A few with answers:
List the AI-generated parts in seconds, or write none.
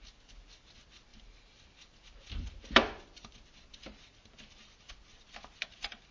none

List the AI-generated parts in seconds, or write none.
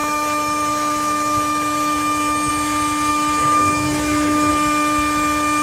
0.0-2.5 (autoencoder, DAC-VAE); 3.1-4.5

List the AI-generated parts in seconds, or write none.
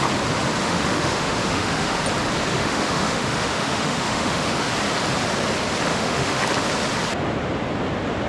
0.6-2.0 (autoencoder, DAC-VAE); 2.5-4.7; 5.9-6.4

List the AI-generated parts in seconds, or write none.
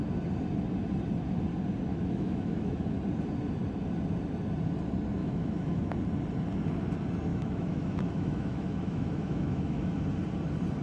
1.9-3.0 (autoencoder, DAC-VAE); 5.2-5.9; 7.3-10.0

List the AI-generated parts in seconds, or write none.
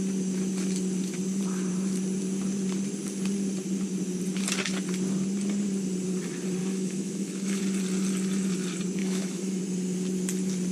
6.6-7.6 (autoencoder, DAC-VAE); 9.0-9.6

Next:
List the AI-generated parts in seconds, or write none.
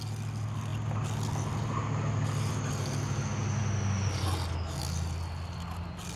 none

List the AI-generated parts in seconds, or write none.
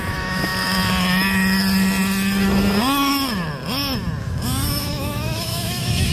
0.0-0.5 (autoencoder, DAC-VAE); 4.2-6.1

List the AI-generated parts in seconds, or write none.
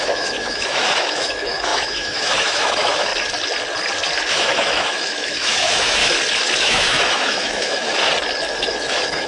0.0-3.1 (autoencoder, DAC-VAE); 4.3-6.0; 6.6-7.9; 8.7-9.3